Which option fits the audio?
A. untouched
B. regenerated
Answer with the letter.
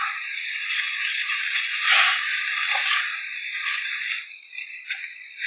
B